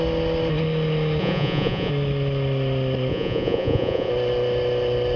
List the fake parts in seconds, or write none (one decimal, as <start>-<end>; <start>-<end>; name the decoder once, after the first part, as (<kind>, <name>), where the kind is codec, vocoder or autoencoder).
1.2-1.9 (vocoder, Vocos); 3.1-4.1